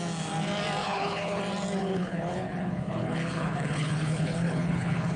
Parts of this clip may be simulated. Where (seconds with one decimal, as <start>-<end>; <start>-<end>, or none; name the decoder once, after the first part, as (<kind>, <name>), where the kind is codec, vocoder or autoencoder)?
0.8-1.4 (codec, HILCodec); 1.8-5.2